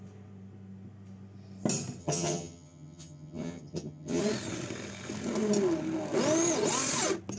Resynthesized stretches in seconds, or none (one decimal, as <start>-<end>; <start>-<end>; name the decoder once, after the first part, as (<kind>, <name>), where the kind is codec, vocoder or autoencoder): 2.0-4.2 (vocoder, HiFi-GAN)